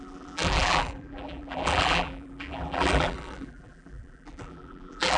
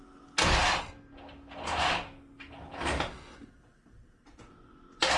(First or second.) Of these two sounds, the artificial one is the first